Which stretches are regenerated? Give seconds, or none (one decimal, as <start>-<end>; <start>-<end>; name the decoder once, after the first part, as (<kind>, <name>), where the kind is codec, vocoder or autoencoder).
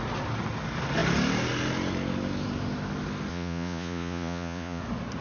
3.3-4.8 (vocoder, Vocos)